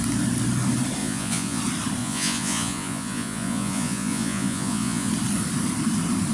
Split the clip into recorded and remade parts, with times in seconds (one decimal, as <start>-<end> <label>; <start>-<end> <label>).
0.0-1.0 recorded; 1.0-1.6 remade; 1.6-2.0 recorded; 2.0-5.1 remade; 5.1-6.3 recorded

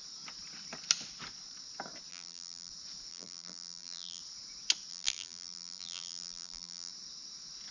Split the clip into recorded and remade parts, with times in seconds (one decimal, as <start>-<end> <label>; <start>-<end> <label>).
0.0-2.1 recorded; 2.1-2.7 remade; 2.7-3.1 recorded; 3.1-4.2 remade; 4.2-4.9 recorded; 4.9-6.9 remade; 6.9-7.7 recorded

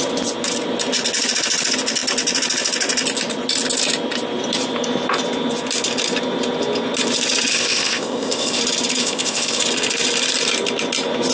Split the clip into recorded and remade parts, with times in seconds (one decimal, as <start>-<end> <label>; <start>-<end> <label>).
0.0-7.5 recorded; 7.5-8.6 remade; 8.6-9.0 recorded; 9.0-9.6 remade; 9.6-11.3 recorded

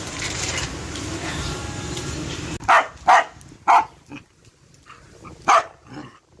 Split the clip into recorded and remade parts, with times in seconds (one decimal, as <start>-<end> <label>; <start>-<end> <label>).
0.0-1.6 remade; 1.6-5.4 recorded; 5.4-6.4 remade

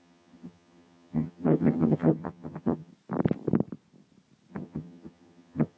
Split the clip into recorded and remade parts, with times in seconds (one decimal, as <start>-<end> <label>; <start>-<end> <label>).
0.0-2.9 remade; 2.9-4.5 recorded; 4.5-5.8 remade

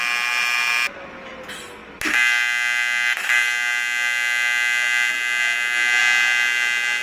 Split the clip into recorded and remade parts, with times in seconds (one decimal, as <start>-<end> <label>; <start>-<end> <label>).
0.0-7.0 recorded

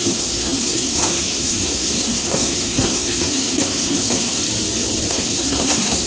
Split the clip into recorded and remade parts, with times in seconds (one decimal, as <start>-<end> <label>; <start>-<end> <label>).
0.0-4.4 remade; 4.4-5.1 recorded; 5.1-6.1 remade

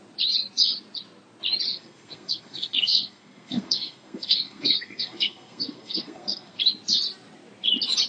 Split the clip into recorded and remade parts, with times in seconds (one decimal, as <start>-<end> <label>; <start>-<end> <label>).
0.0-1.7 recorded; 1.7-6.6 remade; 6.6-8.1 recorded